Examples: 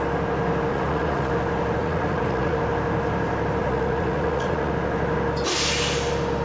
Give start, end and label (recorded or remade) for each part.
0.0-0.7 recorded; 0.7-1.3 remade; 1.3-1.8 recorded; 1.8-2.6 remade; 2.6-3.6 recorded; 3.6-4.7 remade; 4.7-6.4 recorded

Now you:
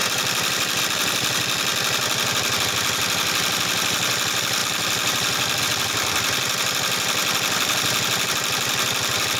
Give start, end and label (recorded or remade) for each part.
0.0-1.7 remade; 1.7-2.7 recorded; 2.7-7.2 remade; 7.2-8.2 recorded; 8.2-9.4 remade